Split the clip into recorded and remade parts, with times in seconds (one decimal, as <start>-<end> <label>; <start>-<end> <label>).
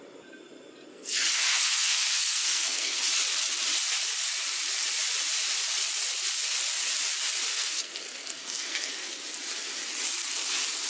0.0-0.9 recorded; 0.9-3.0 remade; 3.0-7.5 recorded; 7.5-9.1 remade; 9.1-10.9 recorded